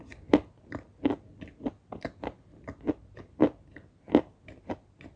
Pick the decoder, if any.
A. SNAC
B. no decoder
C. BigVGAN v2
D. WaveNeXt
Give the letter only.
B